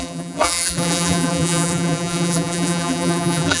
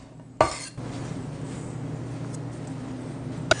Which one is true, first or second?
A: second